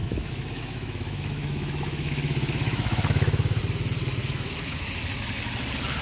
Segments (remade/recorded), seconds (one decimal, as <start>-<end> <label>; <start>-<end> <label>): 0.0-3.6 remade; 3.6-4.2 recorded; 4.2-4.9 remade; 4.9-6.0 recorded